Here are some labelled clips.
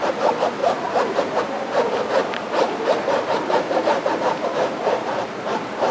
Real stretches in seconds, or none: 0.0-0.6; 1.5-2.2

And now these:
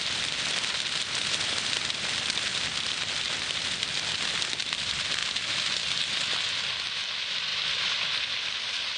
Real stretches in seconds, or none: 0.0-2.5; 3.1-7.5; 8.5-9.0